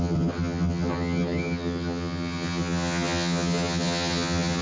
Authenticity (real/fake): fake